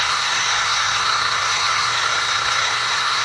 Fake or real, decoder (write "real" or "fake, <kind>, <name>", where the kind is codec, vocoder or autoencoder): fake, codec, SNAC